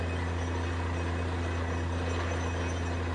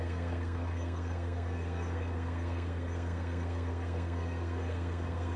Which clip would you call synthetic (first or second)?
second